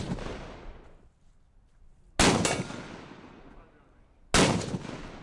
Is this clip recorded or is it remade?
recorded